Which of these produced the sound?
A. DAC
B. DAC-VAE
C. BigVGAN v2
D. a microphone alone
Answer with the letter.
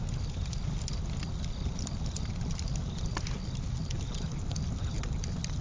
D